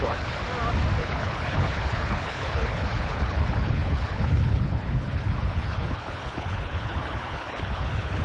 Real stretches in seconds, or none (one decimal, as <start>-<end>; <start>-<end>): 0.4-1.0